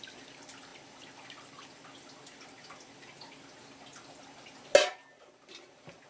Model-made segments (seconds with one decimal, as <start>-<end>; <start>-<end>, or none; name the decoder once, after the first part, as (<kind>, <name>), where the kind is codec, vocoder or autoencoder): none